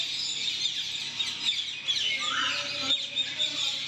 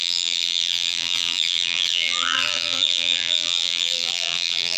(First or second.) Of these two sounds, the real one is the first